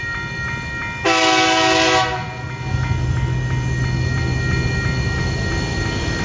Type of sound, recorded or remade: recorded